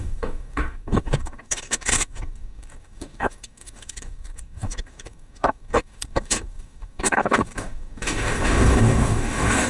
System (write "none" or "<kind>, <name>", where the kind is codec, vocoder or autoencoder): codec, DAC